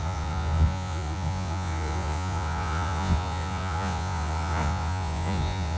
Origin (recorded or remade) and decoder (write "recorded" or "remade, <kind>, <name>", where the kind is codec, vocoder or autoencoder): remade, vocoder, Vocos